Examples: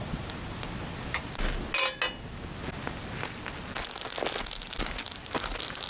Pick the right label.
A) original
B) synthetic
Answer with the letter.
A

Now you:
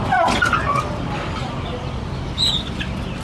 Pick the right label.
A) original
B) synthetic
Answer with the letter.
A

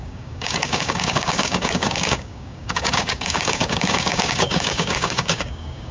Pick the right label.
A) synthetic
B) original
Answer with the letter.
A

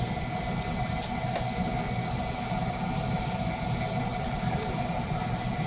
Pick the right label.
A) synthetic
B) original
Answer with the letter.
B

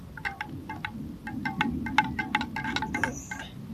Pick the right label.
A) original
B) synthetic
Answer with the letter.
A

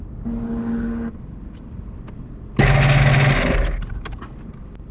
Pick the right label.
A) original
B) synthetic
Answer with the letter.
A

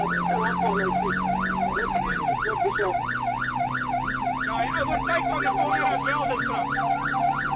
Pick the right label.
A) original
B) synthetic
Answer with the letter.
A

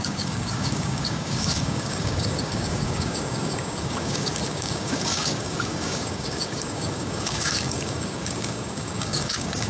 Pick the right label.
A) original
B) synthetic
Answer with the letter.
B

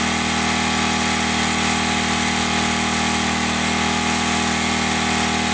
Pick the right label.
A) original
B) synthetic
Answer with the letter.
A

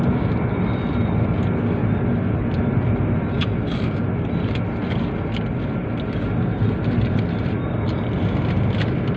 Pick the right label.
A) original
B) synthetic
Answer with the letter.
A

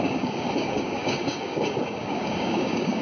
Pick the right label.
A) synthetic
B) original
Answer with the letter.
A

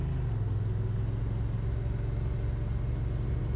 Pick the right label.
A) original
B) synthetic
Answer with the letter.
A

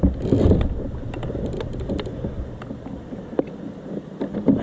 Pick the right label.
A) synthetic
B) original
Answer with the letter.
B